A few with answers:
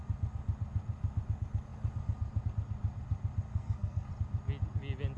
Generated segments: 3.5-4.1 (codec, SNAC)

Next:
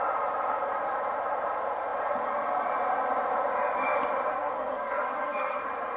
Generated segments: 4.3-5.6 (codec, SNAC)

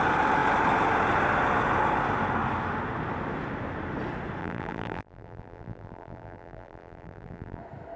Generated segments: 4.4-7.6 (vocoder, BigVGAN v2)

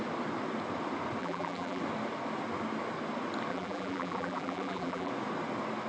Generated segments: 1.2-1.8 (vocoder, BigVGAN v2); 3.5-5.1

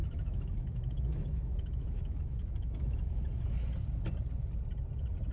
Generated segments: 0.0-3.2 (autoencoder, DAC-VAE)

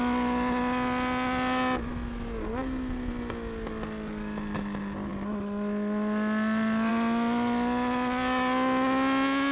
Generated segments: none